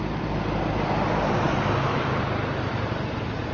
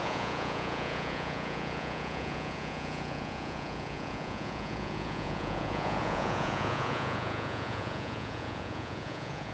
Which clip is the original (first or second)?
first